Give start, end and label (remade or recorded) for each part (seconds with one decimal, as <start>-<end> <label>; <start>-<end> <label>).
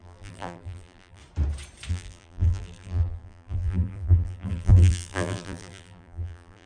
0.0-1.2 remade; 1.2-1.9 recorded; 1.9-6.7 remade